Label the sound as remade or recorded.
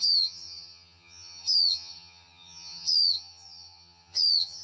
remade